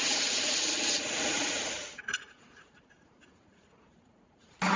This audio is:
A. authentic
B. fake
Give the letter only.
B